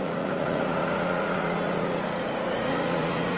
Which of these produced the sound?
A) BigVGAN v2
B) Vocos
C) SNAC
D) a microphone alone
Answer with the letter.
B